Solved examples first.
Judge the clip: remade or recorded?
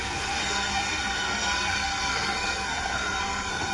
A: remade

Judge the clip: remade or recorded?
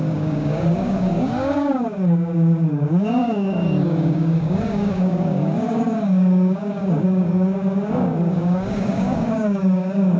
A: remade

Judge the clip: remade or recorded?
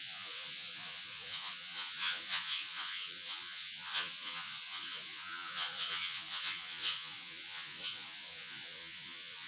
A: remade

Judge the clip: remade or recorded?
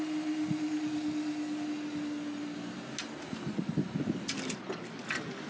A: recorded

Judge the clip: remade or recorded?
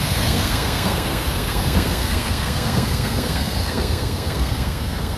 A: remade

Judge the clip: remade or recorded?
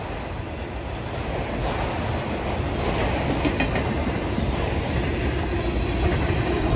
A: recorded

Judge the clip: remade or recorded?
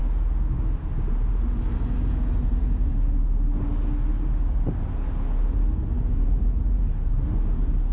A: recorded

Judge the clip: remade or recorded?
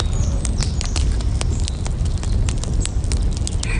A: recorded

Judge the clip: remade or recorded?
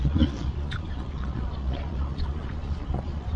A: remade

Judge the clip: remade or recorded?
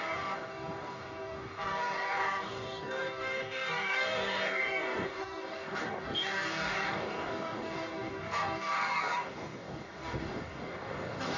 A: remade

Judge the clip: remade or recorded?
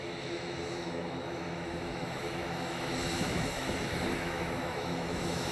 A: remade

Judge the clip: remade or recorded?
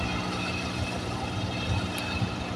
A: recorded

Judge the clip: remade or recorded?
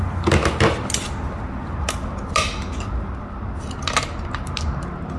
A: recorded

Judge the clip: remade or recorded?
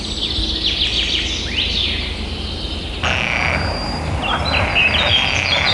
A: recorded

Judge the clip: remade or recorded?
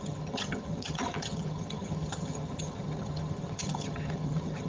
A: remade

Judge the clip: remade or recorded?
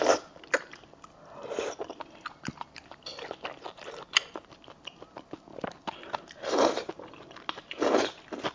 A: recorded